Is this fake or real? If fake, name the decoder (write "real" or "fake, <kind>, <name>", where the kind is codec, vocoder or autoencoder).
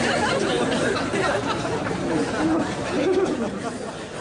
real